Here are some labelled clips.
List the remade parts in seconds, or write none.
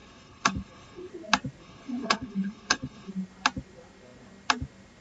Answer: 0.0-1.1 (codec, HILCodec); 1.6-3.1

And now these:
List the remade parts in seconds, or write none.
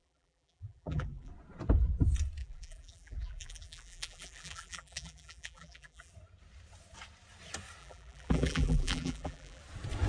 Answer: 0.0-1.3 (vocoder, BigVGAN v2); 2.4-6.1; 7.8-9.6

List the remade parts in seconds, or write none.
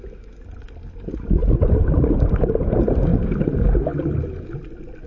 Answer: none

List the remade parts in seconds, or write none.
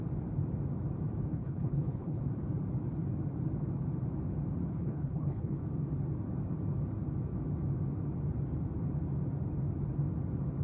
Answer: 1.3-2.2 (codec, HILCodec); 4.6-5.6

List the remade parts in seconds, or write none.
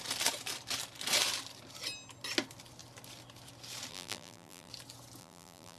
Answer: 3.9-4.7 (vocoder, BigVGAN v2); 5.2-5.8